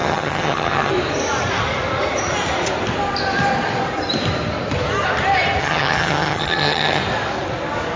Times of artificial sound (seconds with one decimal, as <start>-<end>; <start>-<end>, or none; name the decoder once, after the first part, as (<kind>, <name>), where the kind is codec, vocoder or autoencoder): 0.0-0.9 (vocoder, HiFi-GAN); 5.6-7.0